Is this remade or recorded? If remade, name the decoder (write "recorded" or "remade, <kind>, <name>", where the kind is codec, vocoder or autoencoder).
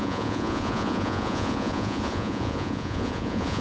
remade, vocoder, Vocos